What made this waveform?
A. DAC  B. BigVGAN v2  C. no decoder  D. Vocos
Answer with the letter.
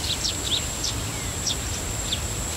B